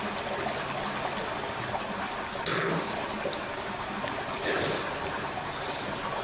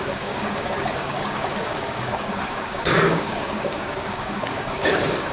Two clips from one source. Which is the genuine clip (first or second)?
first